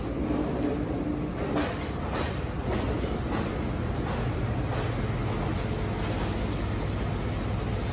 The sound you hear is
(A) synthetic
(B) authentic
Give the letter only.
B